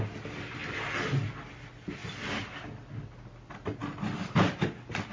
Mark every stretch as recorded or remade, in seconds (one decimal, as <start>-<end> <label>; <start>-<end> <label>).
0.0-5.1 recorded